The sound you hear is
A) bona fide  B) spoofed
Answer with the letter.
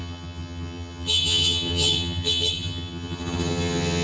B